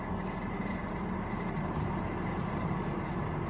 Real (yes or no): yes